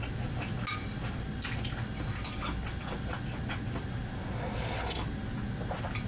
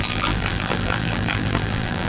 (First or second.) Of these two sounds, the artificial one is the second